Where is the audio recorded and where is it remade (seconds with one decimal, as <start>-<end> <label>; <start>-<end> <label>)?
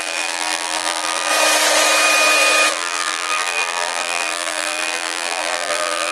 0.0-1.3 remade; 1.3-2.7 recorded; 2.7-6.1 remade